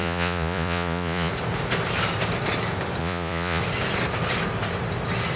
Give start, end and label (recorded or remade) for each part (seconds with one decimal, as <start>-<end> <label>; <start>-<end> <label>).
0.0-1.3 remade; 1.3-3.0 recorded; 3.0-3.6 remade; 3.6-5.4 recorded